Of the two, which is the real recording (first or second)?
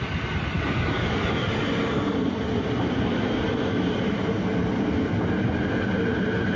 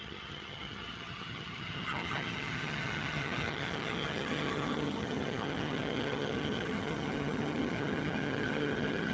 first